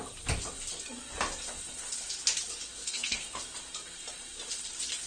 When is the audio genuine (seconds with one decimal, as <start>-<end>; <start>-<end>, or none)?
0.0-2.8; 3.4-5.1